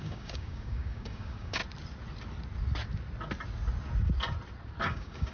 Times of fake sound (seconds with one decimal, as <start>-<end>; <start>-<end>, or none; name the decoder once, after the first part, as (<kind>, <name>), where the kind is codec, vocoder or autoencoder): 0.0-1.6 (codec, DAC); 4.8-5.3